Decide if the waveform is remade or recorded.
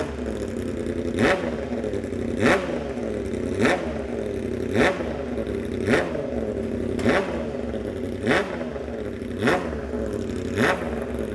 recorded